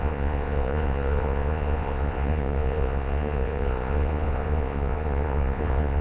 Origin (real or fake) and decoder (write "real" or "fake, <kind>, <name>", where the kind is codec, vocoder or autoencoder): fake, vocoder, Vocos